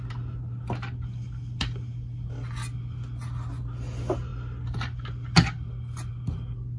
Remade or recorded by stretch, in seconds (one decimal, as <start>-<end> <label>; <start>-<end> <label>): 0.0-6.8 recorded